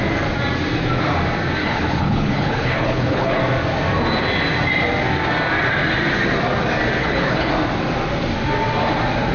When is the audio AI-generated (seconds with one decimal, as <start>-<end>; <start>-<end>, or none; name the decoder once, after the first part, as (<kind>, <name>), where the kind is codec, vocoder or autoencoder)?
1.6-3.4 (codec, HILCodec); 7.0-7.5